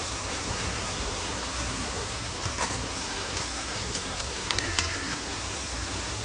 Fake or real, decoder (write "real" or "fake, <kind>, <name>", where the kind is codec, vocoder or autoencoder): fake, codec, SNAC